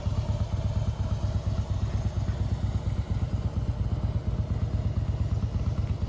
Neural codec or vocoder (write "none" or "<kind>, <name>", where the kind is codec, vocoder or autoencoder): none